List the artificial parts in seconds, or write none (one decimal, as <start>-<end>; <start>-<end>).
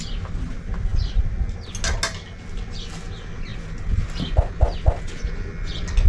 none